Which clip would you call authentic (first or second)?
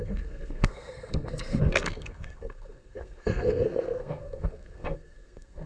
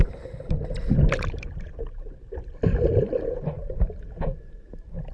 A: second